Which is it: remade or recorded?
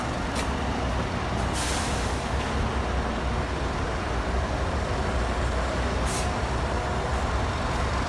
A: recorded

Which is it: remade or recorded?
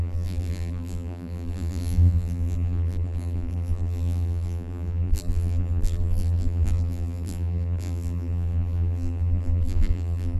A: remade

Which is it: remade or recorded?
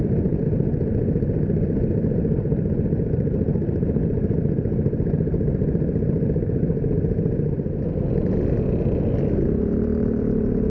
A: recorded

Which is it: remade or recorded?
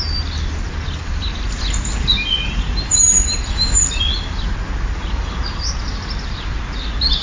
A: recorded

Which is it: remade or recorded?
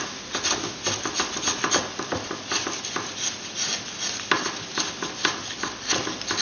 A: recorded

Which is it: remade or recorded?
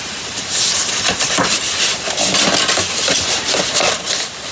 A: recorded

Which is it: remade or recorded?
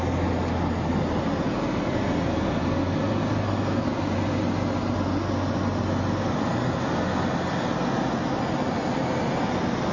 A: recorded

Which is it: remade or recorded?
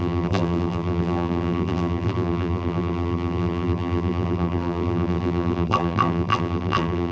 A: remade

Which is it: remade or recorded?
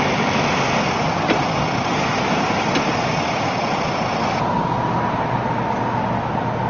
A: recorded